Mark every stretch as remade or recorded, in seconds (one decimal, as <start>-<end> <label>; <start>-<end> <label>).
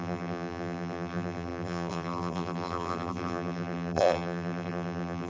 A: 0.0-5.3 remade